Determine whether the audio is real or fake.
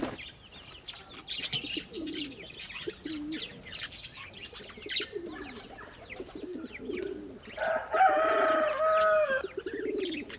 real